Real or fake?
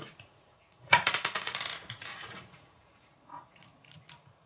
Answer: fake